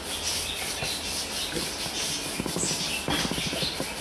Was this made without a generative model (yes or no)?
yes